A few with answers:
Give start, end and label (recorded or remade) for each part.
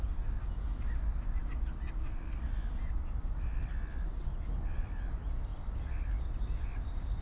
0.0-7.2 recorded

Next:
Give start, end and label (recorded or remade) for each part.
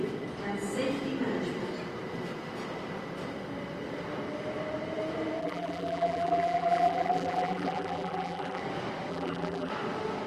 0.0-5.4 recorded; 5.4-8.6 remade; 8.6-9.1 recorded; 9.1-9.7 remade; 9.7-10.3 recorded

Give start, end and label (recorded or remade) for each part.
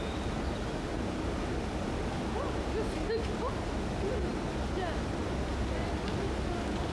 0.0-6.9 recorded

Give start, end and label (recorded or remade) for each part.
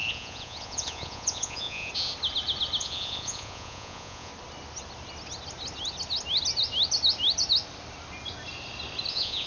0.0-1.9 remade; 1.9-2.8 recorded; 2.8-4.3 remade; 4.3-9.1 recorded; 9.1-9.5 remade